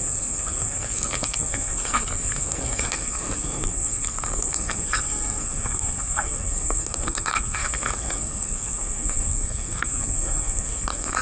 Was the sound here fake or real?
fake